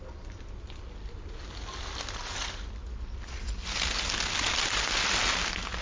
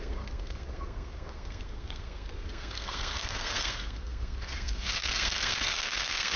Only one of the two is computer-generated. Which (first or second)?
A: second